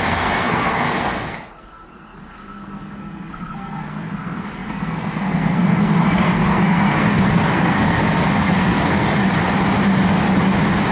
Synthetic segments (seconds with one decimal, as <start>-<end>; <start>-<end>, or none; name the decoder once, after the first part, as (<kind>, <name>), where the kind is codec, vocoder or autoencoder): 0.0-9.2 (codec, SNAC)